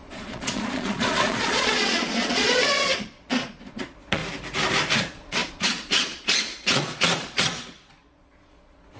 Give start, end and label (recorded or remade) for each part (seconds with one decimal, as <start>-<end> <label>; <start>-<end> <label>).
0.0-4.2 remade; 4.2-5.0 recorded; 5.0-9.0 remade